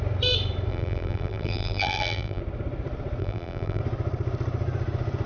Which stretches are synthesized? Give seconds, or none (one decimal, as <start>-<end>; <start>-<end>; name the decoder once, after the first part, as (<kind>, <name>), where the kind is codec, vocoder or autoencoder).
0.7-2.4 (vocoder, BigVGAN v2); 3.2-3.8